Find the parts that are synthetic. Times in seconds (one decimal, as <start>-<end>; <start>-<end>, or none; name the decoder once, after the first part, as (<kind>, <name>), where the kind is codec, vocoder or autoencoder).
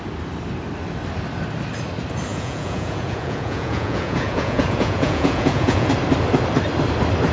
2.3-5.9 (vocoder, Vocos)